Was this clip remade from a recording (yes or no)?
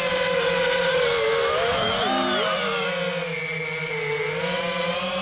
no